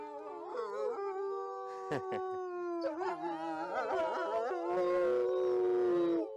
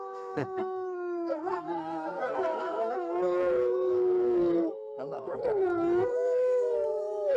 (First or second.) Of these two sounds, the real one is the first